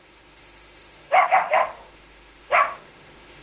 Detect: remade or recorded remade